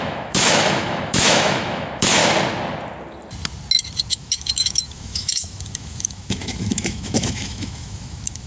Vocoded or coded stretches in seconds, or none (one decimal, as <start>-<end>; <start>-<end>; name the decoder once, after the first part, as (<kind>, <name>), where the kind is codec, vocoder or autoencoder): 0.0-2.2 (autoencoder, DAC-VAE); 4.1-8.5